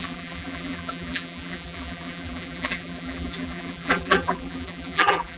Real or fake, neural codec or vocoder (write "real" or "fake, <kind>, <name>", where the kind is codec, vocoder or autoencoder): fake, vocoder, BigVGAN v2